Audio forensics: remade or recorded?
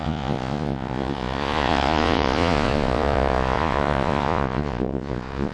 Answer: remade